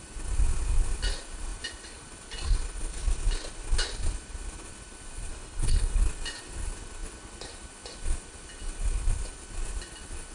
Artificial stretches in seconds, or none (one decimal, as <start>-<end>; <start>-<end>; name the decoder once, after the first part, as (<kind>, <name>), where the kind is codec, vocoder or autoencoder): 5.3-6.0 (codec, HILCodec)